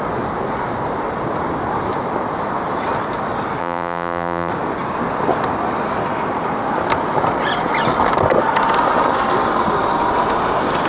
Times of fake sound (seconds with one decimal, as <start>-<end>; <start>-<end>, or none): 3.6-4.5